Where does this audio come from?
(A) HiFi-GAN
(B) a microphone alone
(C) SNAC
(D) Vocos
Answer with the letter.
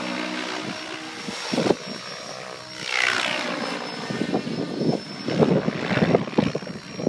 B